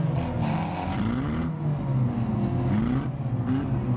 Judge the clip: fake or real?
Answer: real